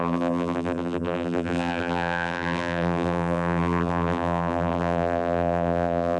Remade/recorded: remade